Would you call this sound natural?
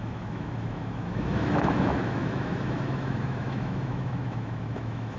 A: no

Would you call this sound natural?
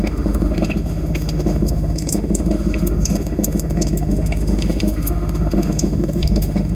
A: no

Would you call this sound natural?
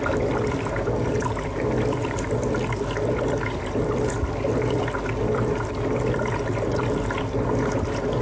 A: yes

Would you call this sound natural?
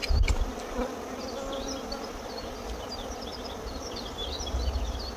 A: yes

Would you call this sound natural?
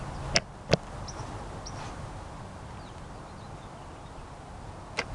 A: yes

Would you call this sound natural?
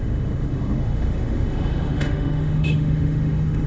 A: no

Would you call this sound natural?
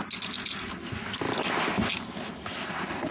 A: yes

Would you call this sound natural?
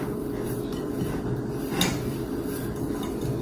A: yes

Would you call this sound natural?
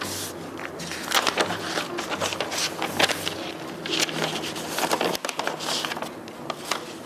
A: yes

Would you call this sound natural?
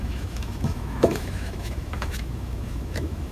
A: no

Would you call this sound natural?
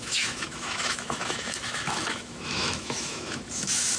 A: no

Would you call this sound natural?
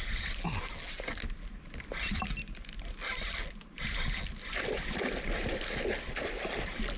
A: yes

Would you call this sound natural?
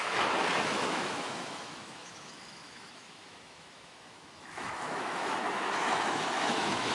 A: no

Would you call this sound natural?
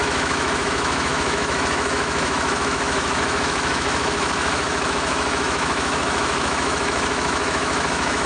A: no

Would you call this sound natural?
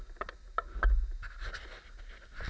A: yes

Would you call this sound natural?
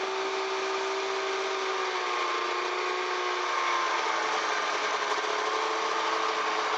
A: yes